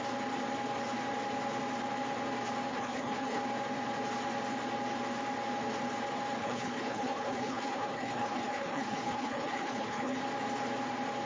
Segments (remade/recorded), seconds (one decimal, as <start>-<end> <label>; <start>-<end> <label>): 0.0-2.7 recorded; 2.7-3.4 remade; 3.4-6.4 recorded; 6.4-10.2 remade; 10.2-11.3 recorded